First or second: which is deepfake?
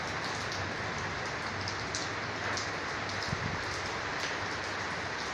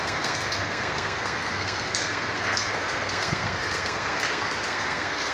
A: second